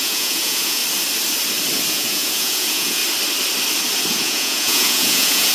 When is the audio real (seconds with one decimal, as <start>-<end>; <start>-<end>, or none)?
0.8-1.9; 3.0-4.1